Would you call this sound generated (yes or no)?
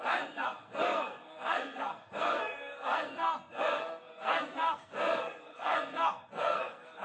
yes